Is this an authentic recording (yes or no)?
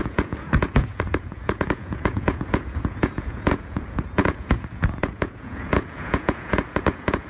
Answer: no